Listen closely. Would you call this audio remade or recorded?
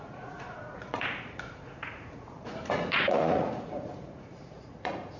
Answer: remade